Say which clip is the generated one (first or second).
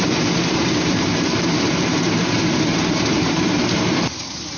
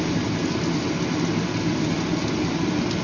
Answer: first